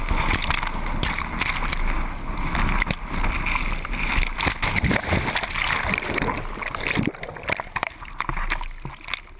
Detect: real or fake real